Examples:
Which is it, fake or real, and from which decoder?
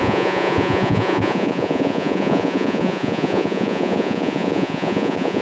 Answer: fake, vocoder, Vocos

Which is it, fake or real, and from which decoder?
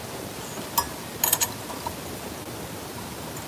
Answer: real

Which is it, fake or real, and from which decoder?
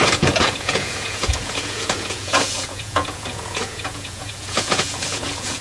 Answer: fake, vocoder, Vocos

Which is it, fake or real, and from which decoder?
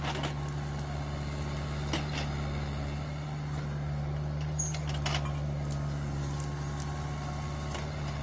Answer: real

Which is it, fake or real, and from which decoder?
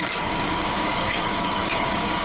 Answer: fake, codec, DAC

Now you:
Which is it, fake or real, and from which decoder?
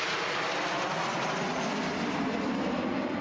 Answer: real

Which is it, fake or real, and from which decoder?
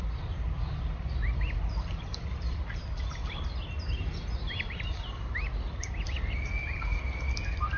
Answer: fake, vocoder, BigVGAN v2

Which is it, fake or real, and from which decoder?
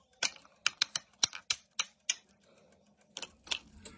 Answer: real